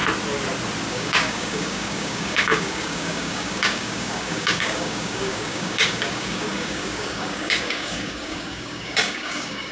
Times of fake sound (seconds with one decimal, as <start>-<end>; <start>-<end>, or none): 0.9-9.7